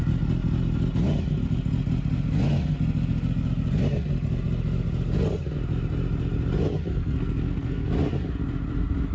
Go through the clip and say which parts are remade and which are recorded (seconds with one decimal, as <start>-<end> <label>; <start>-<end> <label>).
0.0-6.9 recorded; 6.9-7.9 remade; 7.9-9.1 recorded